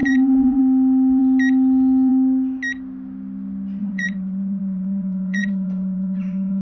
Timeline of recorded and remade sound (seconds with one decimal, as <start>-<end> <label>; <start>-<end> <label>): 0.0-0.6 remade; 0.6-3.8 recorded; 3.8-6.6 remade